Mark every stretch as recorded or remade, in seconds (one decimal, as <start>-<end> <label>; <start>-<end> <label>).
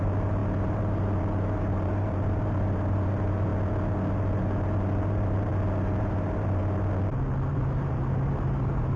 0.0-3.5 remade; 3.5-4.4 recorded; 4.4-5.5 remade; 5.5-6.0 recorded; 6.0-6.6 remade; 6.6-7.5 recorded; 7.5-9.0 remade